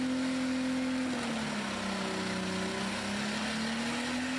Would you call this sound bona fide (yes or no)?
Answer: yes